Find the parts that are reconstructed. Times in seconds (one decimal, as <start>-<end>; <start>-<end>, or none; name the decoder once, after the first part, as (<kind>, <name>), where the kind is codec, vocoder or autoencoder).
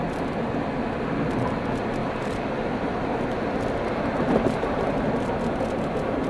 2.0-3.4 (vocoder, BigVGAN v2); 3.9-4.8